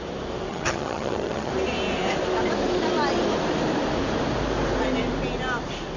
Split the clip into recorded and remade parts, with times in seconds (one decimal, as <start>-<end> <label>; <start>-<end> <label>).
0.0-0.5 recorded; 0.5-1.5 remade; 1.5-6.0 recorded